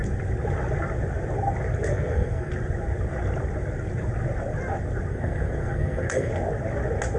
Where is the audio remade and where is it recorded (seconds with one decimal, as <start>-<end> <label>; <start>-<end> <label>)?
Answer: 0.0-1.9 recorded; 1.9-2.5 remade; 2.5-5.1 recorded; 5.1-6.3 remade; 6.3-7.2 recorded